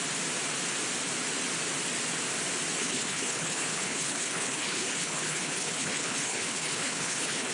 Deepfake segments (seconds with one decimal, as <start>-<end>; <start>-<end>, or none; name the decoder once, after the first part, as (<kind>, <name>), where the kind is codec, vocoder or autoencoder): 2.8-7.5 (codec, HILCodec)